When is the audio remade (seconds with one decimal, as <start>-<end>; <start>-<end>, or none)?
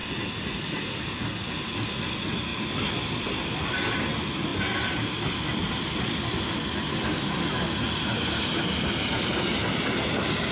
0.0-1.0; 9.3-10.0